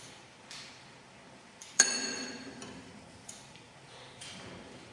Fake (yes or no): yes